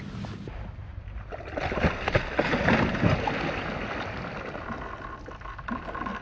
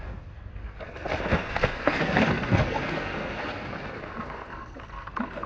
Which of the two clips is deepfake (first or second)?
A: second